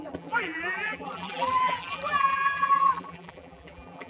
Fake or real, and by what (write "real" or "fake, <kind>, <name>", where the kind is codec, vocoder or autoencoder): fake, vocoder, BigVGAN v2